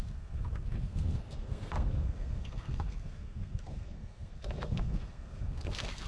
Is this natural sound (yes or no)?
no